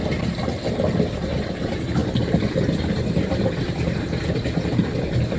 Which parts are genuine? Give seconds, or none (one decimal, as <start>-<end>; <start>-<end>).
0.0-0.7